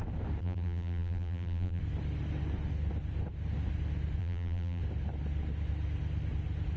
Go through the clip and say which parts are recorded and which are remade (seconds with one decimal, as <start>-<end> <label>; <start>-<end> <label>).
0.0-0.4 recorded; 0.4-1.8 remade; 1.8-4.2 recorded; 4.2-4.8 remade; 4.8-6.8 recorded